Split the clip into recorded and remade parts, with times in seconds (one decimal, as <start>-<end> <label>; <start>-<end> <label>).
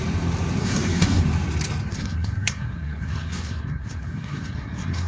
0.0-0.6 recorded; 0.6-1.2 remade; 1.2-1.9 recorded; 1.9-5.1 remade